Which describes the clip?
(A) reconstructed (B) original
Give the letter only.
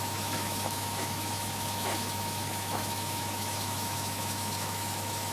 A